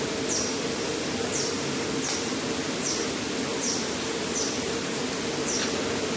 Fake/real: real